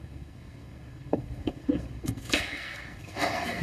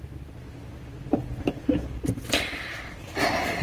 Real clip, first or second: second